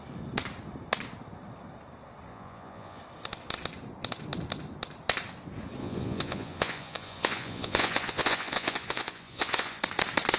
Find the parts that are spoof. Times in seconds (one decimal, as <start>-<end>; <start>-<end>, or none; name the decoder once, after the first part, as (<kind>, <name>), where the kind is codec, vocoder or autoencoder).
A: 2.3-3.0 (vocoder, Vocos); 5.8-9.8

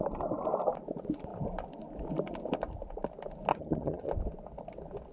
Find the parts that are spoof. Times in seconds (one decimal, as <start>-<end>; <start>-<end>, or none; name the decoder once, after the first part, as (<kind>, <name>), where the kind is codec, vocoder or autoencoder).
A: 3.5-4.1 (vocoder, HiFi-GAN)

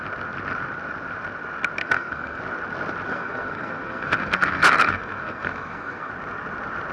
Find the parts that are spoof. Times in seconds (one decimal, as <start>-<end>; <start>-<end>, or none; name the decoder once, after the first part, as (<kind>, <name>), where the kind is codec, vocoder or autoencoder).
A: 1.8-2.4 (codec, SNAC); 3.1-6.1

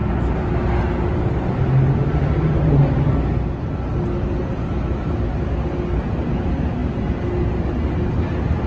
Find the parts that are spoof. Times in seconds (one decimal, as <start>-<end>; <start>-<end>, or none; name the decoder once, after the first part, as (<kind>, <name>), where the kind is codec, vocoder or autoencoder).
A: none

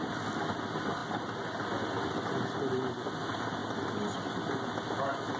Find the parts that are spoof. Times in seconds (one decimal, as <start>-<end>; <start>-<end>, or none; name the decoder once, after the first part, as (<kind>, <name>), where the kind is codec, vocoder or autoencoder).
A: none

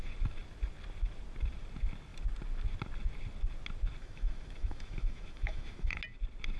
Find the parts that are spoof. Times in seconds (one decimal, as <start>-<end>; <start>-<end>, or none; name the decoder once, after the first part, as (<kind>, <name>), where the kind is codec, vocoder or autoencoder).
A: 4.0-6.0 (autoencoder, DAC-VAE)